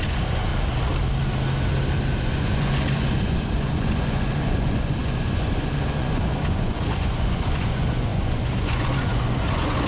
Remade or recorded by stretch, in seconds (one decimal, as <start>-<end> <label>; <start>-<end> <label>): 0.0-0.5 remade; 0.5-2.2 recorded; 2.2-9.9 remade